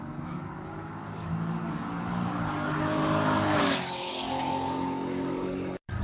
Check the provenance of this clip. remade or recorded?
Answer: remade